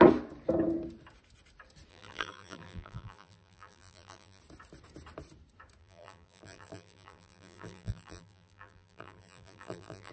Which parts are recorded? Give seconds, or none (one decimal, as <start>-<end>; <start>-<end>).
0.0-1.9; 4.4-5.8